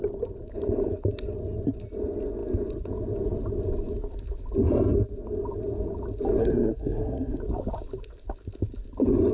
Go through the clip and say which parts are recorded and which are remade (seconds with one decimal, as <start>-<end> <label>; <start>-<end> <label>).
0.0-6.4 recorded; 6.4-7.4 remade; 7.4-9.3 recorded